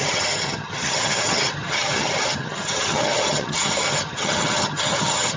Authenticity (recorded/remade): remade